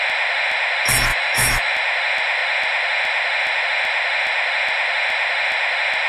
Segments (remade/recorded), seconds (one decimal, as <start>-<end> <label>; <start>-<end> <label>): 0.0-1.1 recorded; 1.1-1.7 remade; 1.7-6.1 recorded